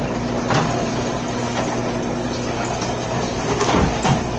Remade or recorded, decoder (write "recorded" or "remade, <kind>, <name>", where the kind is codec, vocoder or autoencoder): recorded